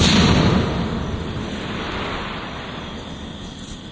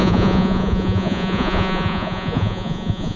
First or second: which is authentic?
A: first